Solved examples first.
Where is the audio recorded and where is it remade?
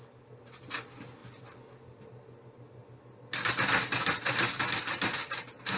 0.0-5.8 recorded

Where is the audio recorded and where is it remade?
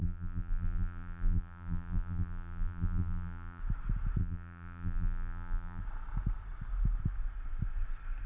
0.0-3.6 remade; 3.6-4.2 recorded; 4.2-5.8 remade; 5.8-8.3 recorded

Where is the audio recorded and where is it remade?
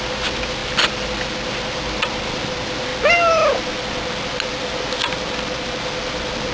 0.0-0.6 recorded; 0.6-1.3 remade; 1.3-6.5 recorded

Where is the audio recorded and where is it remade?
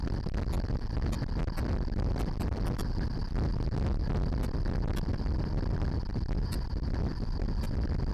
0.0-3.2 remade; 3.2-4.0 recorded; 4.0-8.1 remade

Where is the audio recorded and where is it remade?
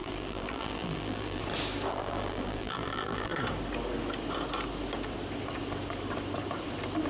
0.0-1.4 remade; 1.4-1.9 recorded; 1.9-3.3 remade; 3.3-7.1 recorded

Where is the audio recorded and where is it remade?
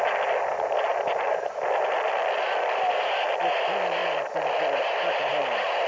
0.0-0.9 recorded; 0.9-2.9 remade; 2.9-4.0 recorded; 4.0-5.3 remade; 5.3-5.9 recorded